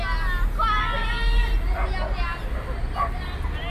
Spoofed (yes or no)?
no